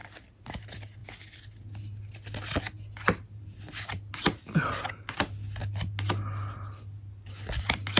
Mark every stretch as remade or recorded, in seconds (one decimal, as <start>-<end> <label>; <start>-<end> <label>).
0.0-8.0 recorded